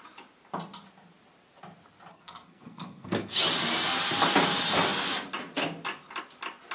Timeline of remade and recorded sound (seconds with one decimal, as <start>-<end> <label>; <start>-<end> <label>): 0.0-2.1 recorded; 2.1-3.3 remade; 3.3-6.7 recorded